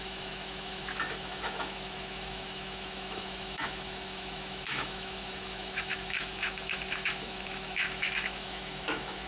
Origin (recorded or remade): remade